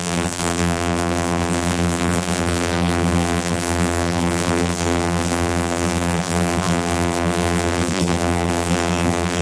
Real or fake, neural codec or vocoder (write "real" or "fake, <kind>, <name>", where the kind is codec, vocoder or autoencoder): fake, vocoder, BigVGAN v2